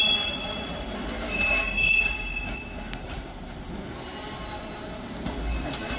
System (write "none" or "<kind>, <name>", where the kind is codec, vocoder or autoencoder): none